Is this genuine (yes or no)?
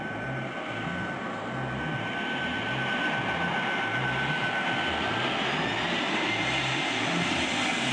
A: yes